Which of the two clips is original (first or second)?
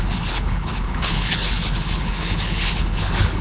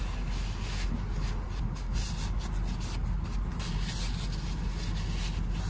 second